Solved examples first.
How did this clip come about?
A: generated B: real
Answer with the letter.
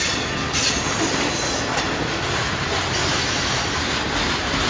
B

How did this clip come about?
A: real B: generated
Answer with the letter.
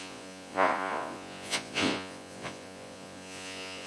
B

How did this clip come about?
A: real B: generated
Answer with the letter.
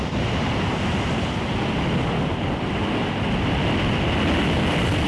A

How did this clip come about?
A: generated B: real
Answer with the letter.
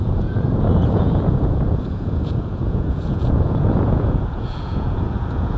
A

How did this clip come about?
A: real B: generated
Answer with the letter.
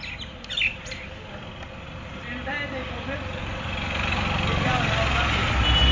A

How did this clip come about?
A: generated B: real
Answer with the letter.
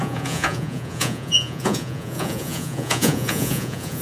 A